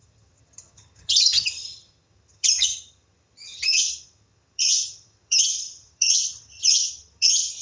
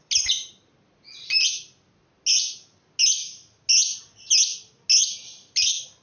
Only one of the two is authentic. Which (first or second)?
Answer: second